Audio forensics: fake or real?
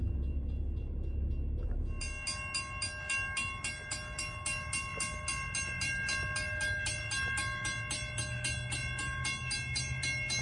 real